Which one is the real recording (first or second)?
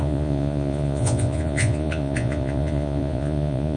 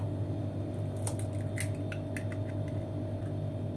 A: second